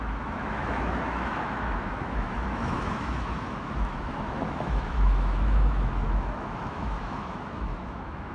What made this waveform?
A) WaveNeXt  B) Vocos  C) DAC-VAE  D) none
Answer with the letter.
C